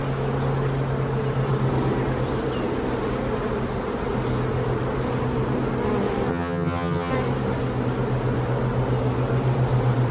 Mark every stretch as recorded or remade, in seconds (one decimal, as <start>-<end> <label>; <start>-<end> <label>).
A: 0.0-6.3 recorded; 6.3-7.1 remade; 7.1-10.1 recorded